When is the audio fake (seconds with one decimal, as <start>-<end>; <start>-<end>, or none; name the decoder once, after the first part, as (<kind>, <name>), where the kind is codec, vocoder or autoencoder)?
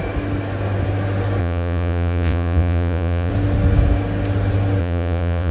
1.4-3.3 (vocoder, Vocos); 4.8-5.5